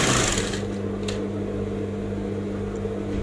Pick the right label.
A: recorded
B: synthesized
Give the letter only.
A